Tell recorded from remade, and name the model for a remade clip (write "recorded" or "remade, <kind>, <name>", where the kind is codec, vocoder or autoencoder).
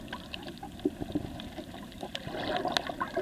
recorded